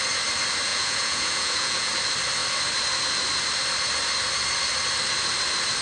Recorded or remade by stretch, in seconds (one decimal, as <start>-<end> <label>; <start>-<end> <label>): 0.0-0.7 recorded; 0.7-1.9 remade; 1.9-5.8 recorded